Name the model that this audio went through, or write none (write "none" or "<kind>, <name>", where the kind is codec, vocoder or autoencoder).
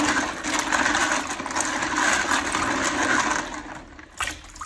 none